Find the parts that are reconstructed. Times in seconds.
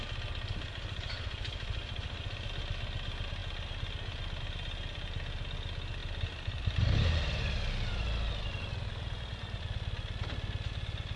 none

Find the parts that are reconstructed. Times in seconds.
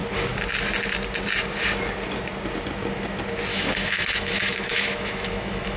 3.5-5.8 (autoencoder, DAC-VAE)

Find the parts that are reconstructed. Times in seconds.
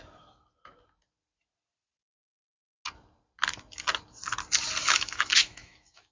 4.8-6.1 (autoencoder, DAC-VAE)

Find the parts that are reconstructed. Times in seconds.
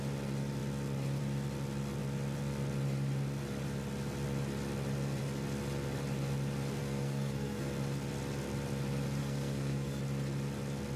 6.8-7.7 (codec, SNAC); 9.2-10.0